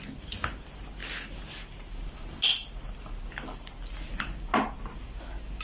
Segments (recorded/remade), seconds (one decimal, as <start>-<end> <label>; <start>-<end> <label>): 0.0-5.6 recorded